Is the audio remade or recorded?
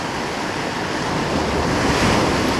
recorded